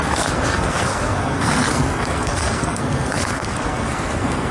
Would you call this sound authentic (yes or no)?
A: no